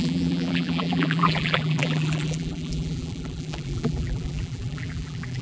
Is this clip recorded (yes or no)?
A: no